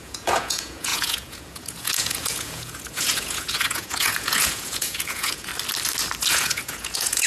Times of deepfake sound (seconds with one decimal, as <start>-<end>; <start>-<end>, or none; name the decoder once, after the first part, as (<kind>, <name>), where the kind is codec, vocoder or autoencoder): 0.0-5.5 (vocoder, Vocos); 6.3-7.3